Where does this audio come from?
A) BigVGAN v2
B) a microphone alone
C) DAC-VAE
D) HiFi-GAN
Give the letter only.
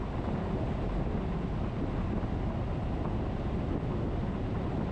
B